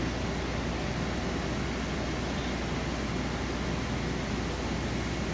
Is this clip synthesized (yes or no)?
no